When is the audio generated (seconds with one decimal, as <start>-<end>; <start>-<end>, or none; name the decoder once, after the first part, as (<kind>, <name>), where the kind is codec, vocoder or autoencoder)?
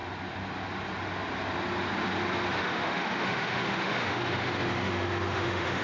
2.6-5.8 (autoencoder, DAC-VAE)